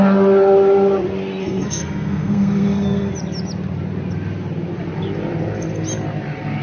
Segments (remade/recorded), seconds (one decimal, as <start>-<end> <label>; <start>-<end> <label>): 0.0-1.4 recorded; 1.4-3.1 remade; 3.1-6.6 recorded